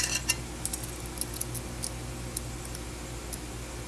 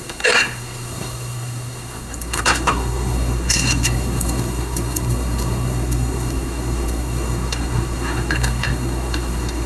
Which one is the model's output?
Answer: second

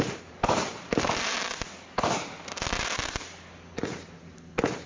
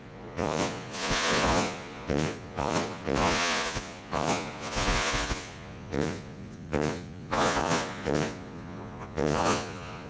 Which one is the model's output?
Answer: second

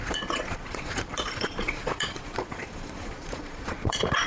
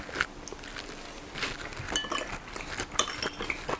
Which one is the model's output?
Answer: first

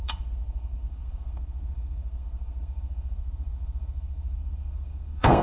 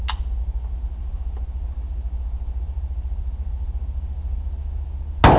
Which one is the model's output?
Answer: first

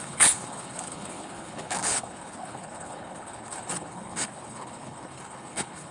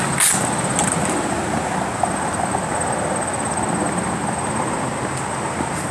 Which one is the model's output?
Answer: first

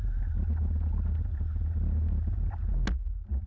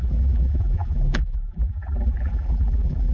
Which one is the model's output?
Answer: second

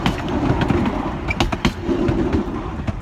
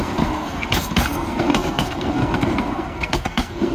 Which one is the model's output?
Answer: second